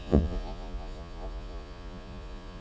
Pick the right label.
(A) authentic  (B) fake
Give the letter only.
B